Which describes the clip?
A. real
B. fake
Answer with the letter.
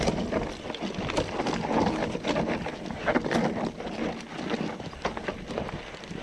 A